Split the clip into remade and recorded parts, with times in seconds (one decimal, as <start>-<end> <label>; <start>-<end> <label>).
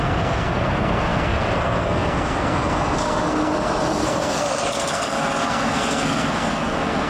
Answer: 0.0-7.1 remade